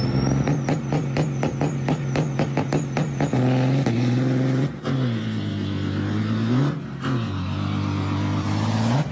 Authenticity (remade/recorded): recorded